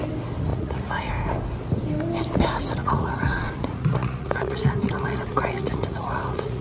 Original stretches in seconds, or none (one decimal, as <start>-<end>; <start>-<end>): 0.0-0.5; 1.1-2.8